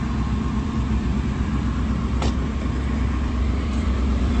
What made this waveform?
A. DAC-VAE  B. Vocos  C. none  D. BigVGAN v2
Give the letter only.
D